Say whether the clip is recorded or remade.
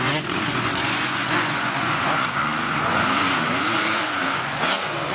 remade